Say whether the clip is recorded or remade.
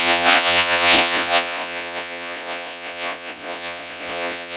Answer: remade